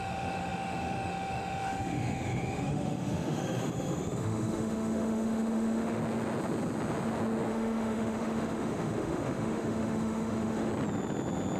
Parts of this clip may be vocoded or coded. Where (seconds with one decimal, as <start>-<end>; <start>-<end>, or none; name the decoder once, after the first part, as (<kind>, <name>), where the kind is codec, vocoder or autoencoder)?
0.0-6.0 (autoencoder, DAC-VAE); 7.5-10.7